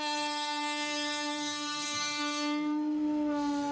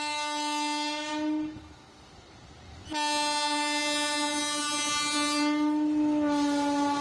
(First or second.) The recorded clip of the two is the second